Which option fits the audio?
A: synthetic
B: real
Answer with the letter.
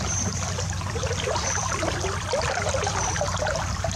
B